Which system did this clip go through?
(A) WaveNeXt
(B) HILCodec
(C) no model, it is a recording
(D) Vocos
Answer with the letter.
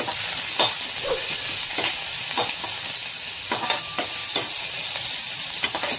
C